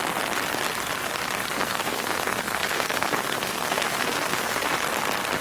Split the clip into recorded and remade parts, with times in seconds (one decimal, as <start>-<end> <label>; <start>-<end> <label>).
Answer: 0.0-1.5 recorded; 1.5-4.7 remade; 4.7-5.4 recorded